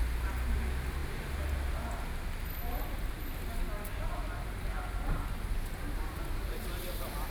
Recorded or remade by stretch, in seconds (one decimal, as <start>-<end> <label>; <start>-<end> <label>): 0.0-7.3 recorded